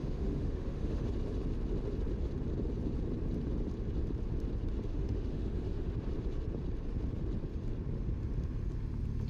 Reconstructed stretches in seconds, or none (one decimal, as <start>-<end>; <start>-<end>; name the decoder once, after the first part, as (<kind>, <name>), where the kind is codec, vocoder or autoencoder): 0.0-1.1 (autoencoder, DAC-VAE); 4.9-5.9